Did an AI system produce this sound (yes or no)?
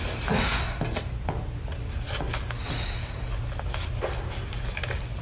no